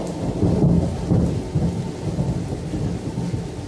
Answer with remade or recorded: recorded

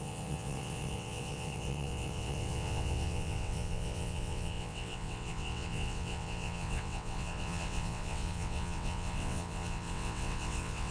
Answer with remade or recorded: remade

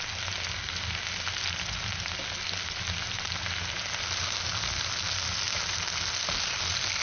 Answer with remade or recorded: recorded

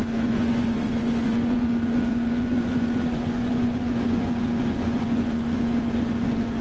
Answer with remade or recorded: remade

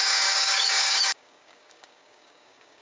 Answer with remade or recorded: remade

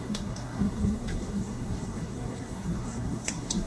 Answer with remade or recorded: remade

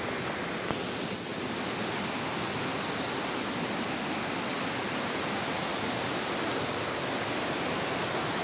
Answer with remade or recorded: recorded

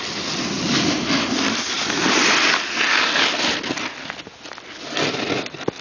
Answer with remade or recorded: recorded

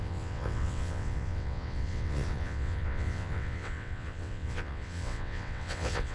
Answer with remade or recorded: remade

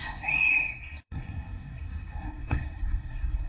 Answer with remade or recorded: remade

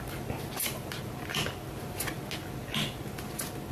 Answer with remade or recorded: recorded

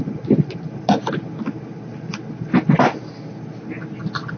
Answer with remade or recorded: recorded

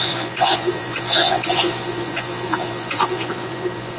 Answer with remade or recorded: remade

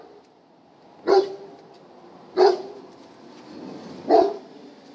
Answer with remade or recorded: recorded